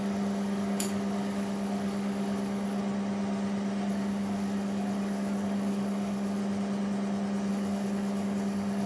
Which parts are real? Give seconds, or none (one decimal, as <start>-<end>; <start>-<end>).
2.8-3.9; 6.4-7.5